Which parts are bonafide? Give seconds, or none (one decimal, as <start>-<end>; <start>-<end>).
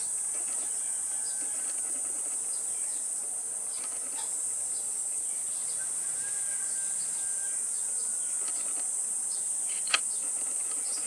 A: 0.0-11.1